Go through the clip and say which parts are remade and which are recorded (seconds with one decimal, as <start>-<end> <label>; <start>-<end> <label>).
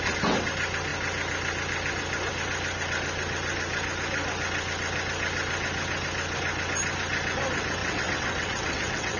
0.0-7.8 recorded; 7.8-9.2 remade